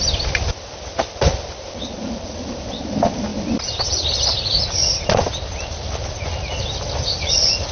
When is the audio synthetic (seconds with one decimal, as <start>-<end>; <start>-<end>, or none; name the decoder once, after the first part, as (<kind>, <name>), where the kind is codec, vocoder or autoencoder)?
none